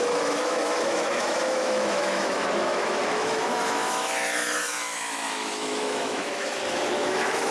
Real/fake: fake